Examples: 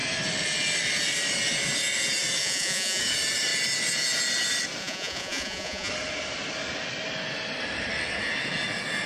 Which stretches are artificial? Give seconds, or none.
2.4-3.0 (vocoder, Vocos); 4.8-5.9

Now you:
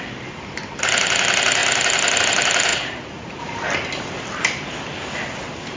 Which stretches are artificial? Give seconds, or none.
2.7-3.4 (vocoder, Vocos)

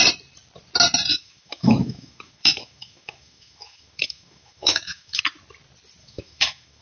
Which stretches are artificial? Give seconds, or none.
1.1-5.2 (autoencoder, DAC-VAE); 6.0-6.8

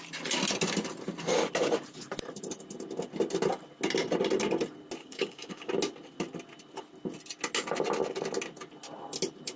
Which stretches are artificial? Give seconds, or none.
5.0-5.7 (codec, DAC)

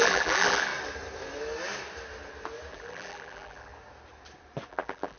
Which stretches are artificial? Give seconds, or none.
0.0-0.7 (vocoder, BigVGAN v2); 2.7-3.7; 4.7-5.2

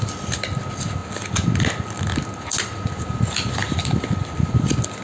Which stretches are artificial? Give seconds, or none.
none